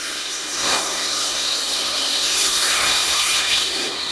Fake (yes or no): yes